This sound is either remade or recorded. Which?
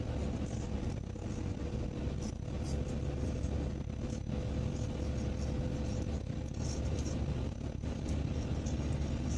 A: recorded